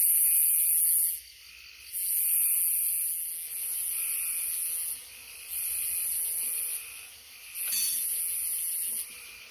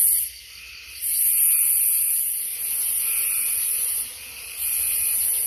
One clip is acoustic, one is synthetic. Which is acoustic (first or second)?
first